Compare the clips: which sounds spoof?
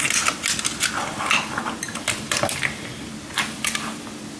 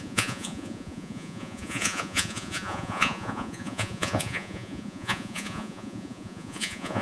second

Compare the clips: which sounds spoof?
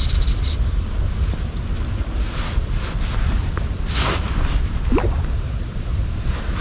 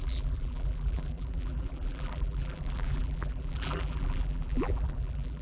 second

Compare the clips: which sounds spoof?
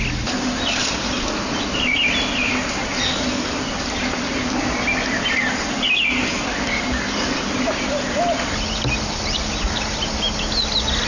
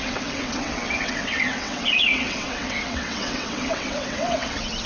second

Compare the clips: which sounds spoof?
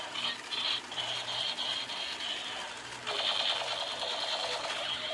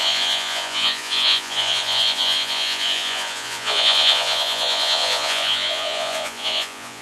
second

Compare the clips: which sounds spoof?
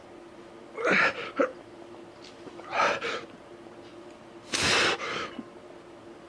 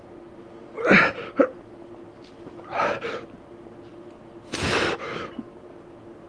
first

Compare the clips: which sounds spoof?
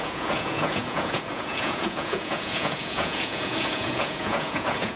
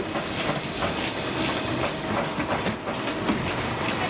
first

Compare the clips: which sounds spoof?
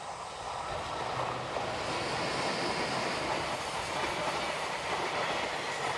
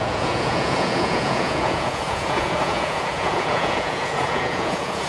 second